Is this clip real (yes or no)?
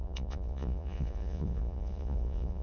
no